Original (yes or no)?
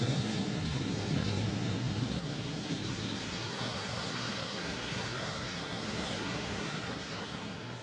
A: no